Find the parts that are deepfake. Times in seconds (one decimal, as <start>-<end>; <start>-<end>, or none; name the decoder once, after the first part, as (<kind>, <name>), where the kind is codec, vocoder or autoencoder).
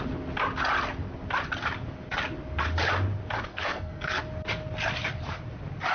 3.5-4.2 (codec, SNAC)